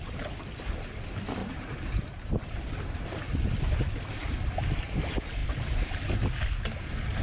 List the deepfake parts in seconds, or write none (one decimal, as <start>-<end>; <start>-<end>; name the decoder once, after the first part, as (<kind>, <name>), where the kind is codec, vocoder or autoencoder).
1.4-3.2 (vocoder, BigVGAN v2)